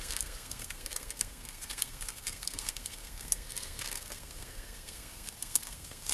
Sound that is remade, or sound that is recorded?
remade